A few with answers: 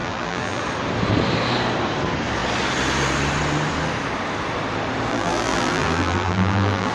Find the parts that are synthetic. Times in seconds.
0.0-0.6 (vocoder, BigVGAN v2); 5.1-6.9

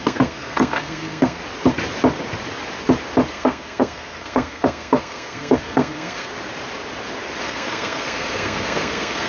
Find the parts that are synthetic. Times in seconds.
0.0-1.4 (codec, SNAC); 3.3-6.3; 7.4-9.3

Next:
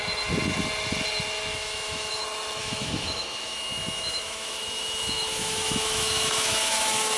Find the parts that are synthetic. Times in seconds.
1.5-2.2 (autoencoder, DAC-VAE); 2.6-7.2